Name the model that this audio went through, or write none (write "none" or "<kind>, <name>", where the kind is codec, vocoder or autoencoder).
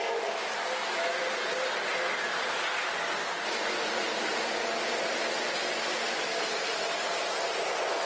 none